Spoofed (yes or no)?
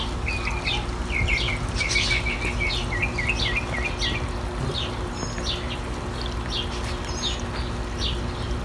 no